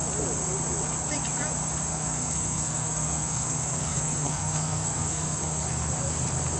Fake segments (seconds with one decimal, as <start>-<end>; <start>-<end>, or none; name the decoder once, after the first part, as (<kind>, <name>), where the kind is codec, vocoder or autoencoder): 1.9-5.9 (codec, SNAC)

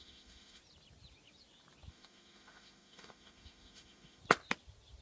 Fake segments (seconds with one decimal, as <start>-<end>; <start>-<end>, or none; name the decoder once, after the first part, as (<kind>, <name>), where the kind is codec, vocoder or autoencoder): 0.0-0.6 (autoencoder, DAC-VAE); 1.9-4.2

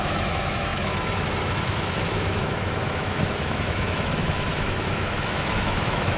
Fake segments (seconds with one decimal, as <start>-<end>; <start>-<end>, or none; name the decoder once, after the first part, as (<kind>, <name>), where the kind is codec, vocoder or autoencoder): 0.0-6.2 (autoencoder, DAC-VAE)

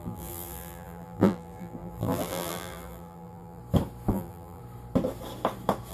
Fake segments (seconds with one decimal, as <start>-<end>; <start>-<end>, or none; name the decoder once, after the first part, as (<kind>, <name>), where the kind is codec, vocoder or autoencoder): 0.0-3.6 (vocoder, BigVGAN v2); 4.1-4.6

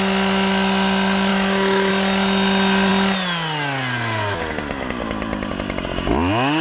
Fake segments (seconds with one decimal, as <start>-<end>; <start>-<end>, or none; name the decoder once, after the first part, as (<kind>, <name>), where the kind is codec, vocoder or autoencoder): 1.3-1.9 (autoencoder, DAC-VAE)

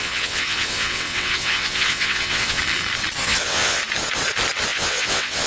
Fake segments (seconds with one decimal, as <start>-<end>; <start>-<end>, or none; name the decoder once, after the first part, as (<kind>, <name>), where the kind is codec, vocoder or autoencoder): 0.0-2.6 (vocoder, WaveNeXt); 3.2-3.8; 4.7-5.5

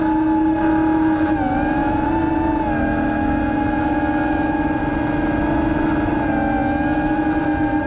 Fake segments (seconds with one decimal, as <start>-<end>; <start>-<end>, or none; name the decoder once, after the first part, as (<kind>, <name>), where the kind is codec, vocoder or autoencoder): none

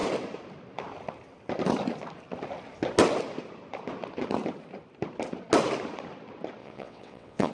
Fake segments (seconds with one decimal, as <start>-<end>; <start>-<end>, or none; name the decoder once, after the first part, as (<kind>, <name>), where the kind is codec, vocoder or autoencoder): 6.6-7.5 (vocoder, WaveNeXt)